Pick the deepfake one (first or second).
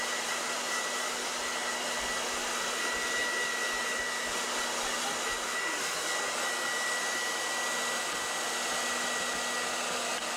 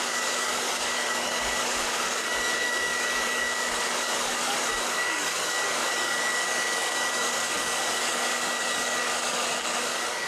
second